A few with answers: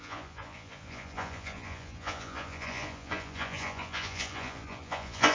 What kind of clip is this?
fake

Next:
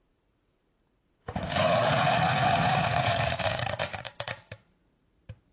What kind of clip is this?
fake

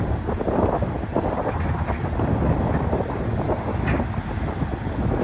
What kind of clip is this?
real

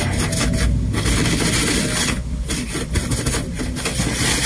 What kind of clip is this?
real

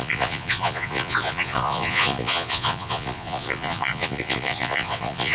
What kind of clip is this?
fake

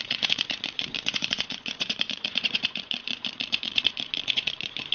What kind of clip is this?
fake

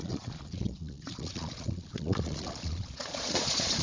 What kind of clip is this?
fake